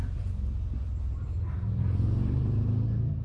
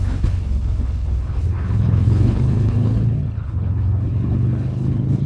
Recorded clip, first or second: first